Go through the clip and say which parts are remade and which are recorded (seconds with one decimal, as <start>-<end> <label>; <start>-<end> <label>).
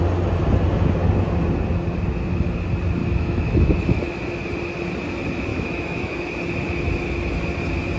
0.0-3.0 recorded; 3.0-4.0 remade; 4.0-5.5 recorded; 5.5-6.2 remade; 6.2-8.0 recorded